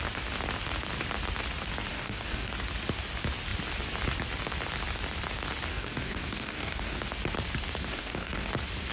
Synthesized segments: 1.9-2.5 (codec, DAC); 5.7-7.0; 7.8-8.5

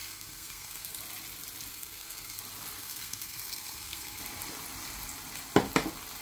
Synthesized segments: 0.0-1.0 (codec, SNAC); 1.7-2.4; 2.8-4.2

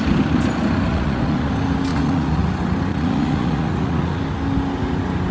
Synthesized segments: 0.9-1.5 (vocoder, Vocos); 1.9-2.5; 2.9-4.2

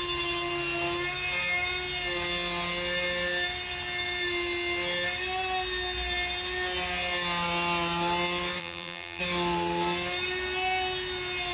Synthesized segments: 8.6-9.2 (vocoder, BigVGAN v2)